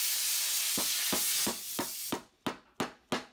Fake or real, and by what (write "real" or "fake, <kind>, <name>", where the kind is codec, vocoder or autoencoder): real